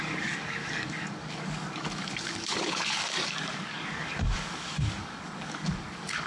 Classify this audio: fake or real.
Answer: fake